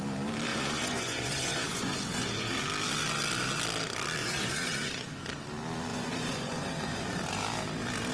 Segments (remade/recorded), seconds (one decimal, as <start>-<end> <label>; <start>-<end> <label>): 0.0-0.5 recorded; 0.5-2.5 remade; 2.5-4.2 recorded; 4.2-5.3 remade; 5.3-5.9 recorded; 5.9-7.2 remade; 7.2-8.1 recorded